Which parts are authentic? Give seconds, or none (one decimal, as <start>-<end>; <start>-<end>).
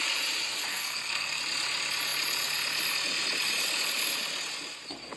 0.0-0.7; 1.4-5.2